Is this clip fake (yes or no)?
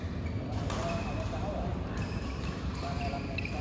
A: yes